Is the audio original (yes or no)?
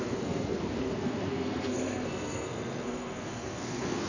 no